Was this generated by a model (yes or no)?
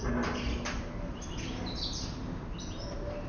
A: no